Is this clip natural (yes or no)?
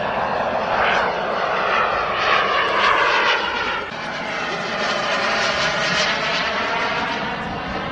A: yes